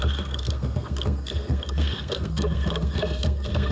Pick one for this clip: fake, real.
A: fake